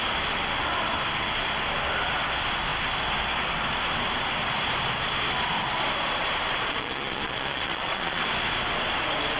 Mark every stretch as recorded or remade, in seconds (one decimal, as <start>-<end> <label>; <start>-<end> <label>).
0.0-6.6 recorded; 6.6-8.2 remade; 8.2-9.4 recorded